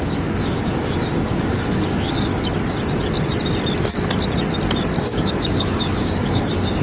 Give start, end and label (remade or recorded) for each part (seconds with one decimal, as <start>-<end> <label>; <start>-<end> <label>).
0.0-2.3 remade; 2.3-5.0 recorded; 5.0-6.8 remade